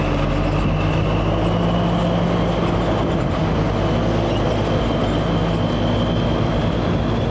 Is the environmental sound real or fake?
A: real